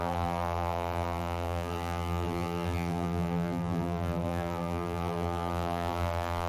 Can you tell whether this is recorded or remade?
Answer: remade